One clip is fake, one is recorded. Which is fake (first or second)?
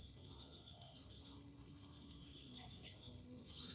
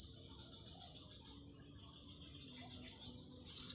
first